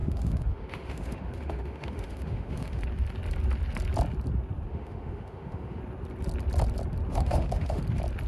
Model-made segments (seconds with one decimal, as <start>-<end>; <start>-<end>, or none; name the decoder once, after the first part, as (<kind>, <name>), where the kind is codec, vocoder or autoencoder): 0.0-2.8 (autoencoder, DAC-VAE); 4.7-5.8; 7.1-7.8

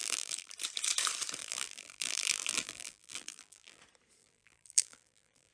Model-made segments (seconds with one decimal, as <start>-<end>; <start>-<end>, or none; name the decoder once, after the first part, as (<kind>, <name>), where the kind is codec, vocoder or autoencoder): 0.0-0.5 (vocoder, BigVGAN v2); 1.4-3.8; 4.2-5.5

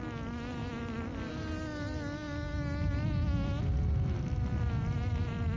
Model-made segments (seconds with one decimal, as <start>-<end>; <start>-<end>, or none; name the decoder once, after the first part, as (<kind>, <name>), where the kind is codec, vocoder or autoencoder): none

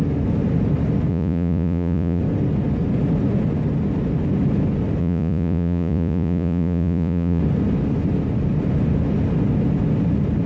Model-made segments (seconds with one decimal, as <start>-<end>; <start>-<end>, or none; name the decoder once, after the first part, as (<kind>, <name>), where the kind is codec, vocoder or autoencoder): 1.1-2.2 (vocoder, Vocos); 5.0-7.4

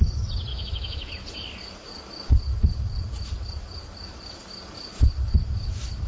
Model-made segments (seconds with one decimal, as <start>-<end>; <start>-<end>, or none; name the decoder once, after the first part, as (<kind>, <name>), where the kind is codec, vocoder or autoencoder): 0.5-1.1 (autoencoder, DAC-VAE)

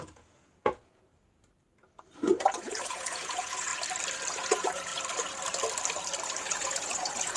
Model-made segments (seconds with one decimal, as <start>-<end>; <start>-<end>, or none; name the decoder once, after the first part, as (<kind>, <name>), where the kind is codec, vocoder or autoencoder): 0.0-1.1 (vocoder, Vocos); 2.6-3.7; 4.3-4.9; 6.4-7.4

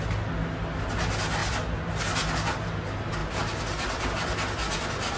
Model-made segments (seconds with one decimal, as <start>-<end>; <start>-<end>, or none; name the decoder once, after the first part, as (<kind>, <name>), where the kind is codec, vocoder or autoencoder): none